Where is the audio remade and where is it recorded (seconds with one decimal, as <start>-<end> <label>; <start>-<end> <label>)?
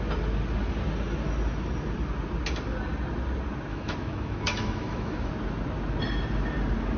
0.0-3.7 recorded; 3.7-5.3 remade; 5.3-7.0 recorded